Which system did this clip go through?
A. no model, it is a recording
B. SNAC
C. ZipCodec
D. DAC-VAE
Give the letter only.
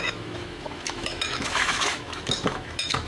D